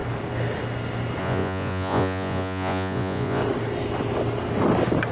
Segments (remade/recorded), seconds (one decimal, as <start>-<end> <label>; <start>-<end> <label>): 0.0-1.2 recorded; 1.2-3.4 remade; 3.4-5.1 recorded